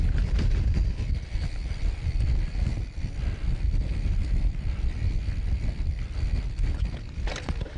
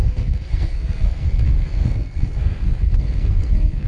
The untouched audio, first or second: first